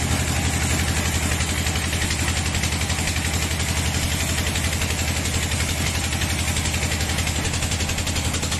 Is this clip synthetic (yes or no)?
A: no